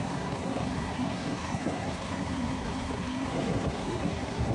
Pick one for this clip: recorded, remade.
remade